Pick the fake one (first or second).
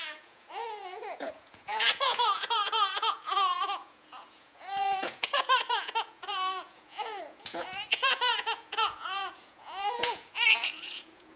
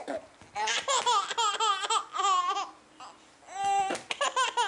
first